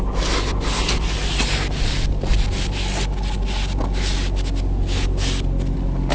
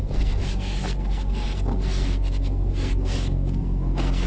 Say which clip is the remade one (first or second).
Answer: second